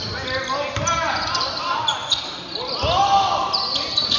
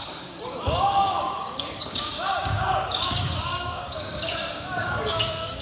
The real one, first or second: first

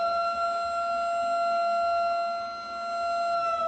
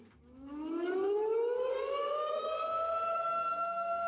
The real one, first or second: first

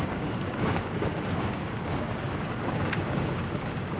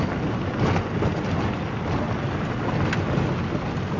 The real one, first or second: second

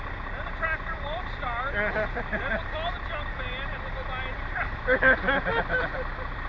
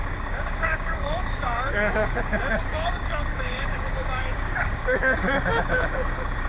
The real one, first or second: first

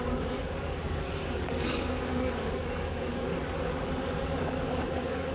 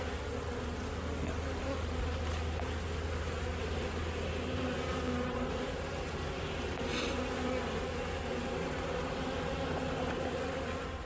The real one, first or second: second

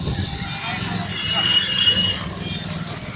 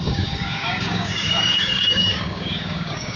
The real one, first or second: first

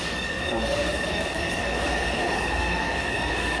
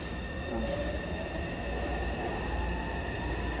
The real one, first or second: second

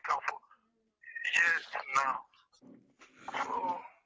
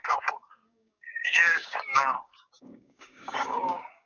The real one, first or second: first